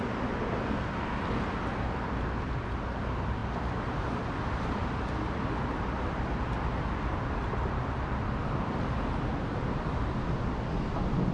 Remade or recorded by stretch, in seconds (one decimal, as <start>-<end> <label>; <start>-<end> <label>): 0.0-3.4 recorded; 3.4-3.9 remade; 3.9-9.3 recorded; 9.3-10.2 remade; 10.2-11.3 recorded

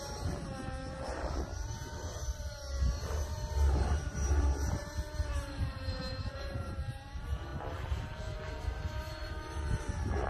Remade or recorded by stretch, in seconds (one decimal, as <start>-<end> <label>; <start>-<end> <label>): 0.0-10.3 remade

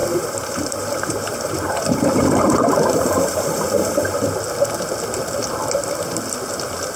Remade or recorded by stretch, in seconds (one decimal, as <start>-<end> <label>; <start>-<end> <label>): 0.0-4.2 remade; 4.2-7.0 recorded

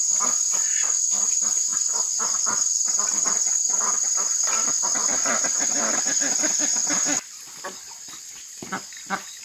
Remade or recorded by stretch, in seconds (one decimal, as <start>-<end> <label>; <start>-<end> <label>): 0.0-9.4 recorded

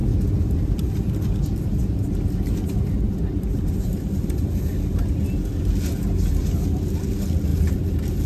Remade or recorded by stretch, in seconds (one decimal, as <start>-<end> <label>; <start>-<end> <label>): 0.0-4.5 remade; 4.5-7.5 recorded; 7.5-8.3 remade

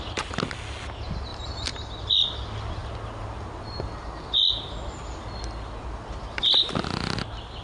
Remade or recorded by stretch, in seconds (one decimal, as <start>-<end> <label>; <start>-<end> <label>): 0.0-1.3 recorded; 1.3-1.9 remade; 1.9-7.6 recorded

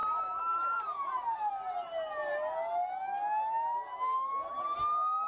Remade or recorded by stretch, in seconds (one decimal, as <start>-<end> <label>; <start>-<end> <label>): 0.0-1.5 remade; 1.5-5.3 recorded